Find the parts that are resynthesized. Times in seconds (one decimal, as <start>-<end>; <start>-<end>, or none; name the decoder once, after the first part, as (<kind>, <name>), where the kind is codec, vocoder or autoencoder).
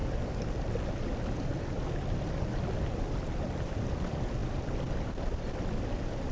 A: none